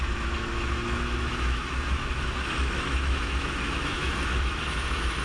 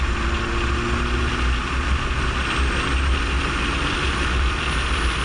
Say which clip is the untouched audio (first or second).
second